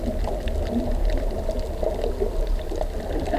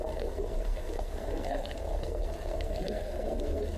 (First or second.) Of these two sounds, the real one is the first